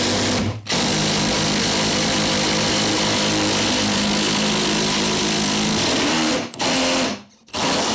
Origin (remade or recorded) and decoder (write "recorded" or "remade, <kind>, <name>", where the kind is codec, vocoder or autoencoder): recorded